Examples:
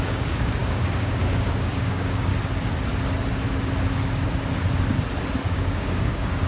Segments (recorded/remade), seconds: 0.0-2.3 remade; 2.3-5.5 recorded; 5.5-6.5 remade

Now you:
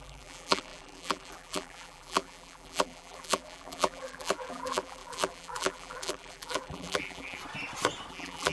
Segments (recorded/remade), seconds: 0.0-7.4 remade; 7.4-8.1 recorded; 8.1-8.5 remade

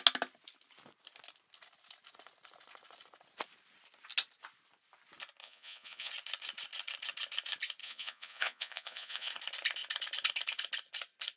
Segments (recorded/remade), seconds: 0.0-5.4 recorded; 5.4-6.1 remade; 6.1-7.8 recorded; 7.8-9.3 remade; 9.3-11.4 recorded

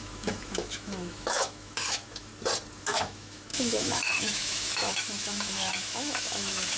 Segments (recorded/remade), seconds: 0.0-2.3 remade; 2.3-2.8 recorded; 2.8-6.8 remade